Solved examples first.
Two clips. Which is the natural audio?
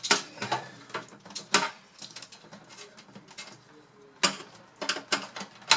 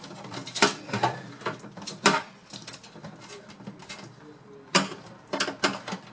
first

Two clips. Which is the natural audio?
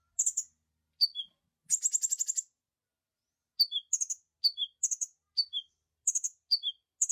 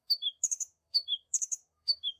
first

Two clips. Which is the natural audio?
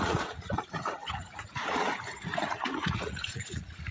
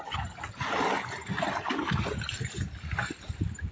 second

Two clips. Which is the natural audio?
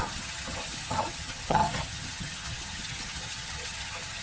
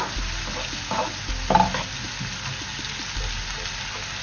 second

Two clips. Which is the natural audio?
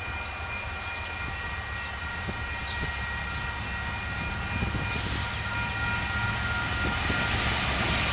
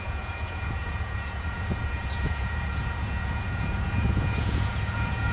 first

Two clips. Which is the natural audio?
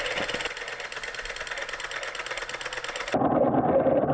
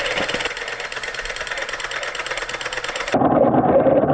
first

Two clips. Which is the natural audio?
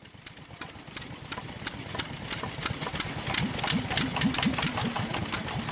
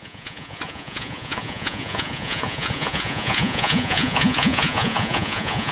first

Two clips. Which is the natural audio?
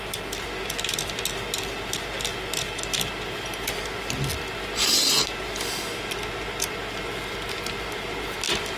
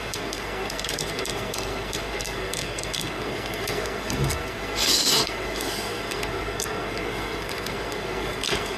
first